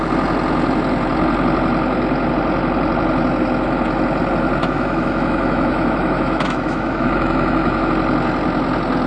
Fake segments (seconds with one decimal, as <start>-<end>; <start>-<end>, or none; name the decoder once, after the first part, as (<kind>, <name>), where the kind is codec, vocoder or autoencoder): 4.6-7.9 (autoencoder, DAC-VAE)